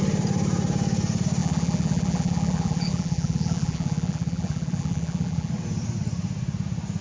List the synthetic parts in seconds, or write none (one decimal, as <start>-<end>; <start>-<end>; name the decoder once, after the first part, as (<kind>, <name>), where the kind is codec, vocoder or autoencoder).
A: 1.4-5.5 (vocoder, BigVGAN v2)